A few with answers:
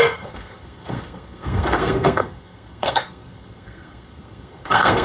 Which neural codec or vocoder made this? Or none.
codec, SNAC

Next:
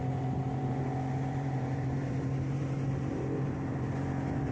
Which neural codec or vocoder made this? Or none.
vocoder, BigVGAN v2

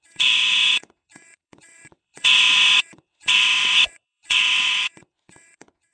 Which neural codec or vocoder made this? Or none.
vocoder, WaveNeXt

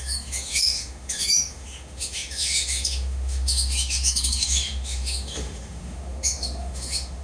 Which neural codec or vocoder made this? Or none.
autoencoder, DAC-VAE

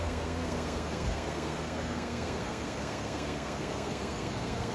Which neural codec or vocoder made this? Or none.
codec, SNAC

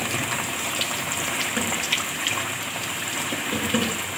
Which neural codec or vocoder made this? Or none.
vocoder, BigVGAN v2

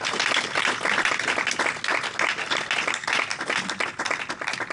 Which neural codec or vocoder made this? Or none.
none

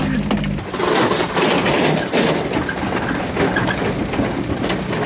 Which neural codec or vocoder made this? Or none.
none